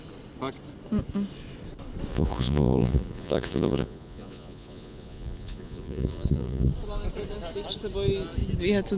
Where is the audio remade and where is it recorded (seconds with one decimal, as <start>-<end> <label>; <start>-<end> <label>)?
0.0-2.1 recorded; 2.1-6.7 remade; 6.7-9.0 recorded